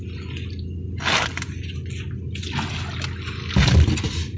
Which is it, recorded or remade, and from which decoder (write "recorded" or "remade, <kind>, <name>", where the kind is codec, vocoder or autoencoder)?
recorded